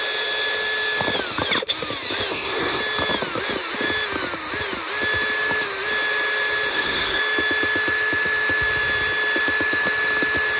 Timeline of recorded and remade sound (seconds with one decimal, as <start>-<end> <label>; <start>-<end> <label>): 0.0-2.3 recorded; 2.3-2.8 remade; 2.8-6.7 recorded; 6.7-7.2 remade; 7.2-10.6 recorded